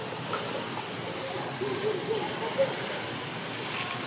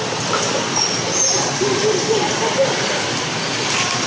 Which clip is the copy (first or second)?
second